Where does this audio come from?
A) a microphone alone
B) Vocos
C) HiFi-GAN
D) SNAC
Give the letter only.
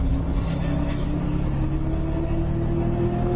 A